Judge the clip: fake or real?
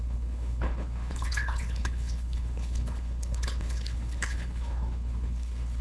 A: fake